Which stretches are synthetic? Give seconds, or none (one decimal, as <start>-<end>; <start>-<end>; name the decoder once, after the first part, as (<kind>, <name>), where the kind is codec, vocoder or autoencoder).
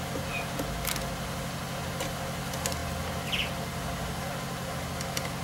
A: none